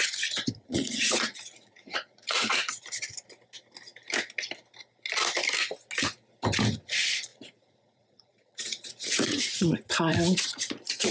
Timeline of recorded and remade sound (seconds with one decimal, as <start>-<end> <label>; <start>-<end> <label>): 0.0-0.6 recorded; 0.6-2.7 remade; 2.7-7.3 recorded; 7.3-11.1 remade